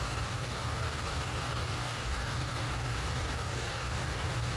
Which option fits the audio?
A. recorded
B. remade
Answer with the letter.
B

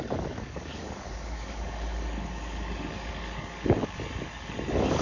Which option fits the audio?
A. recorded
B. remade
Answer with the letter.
B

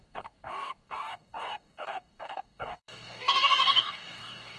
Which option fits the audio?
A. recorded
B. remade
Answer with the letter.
B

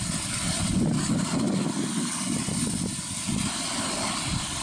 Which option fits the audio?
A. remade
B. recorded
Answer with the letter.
B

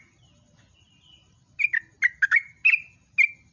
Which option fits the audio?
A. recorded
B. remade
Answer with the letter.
A